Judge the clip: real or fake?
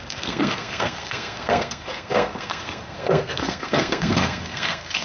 fake